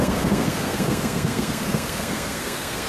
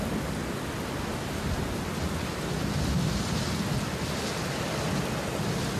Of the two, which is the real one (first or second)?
second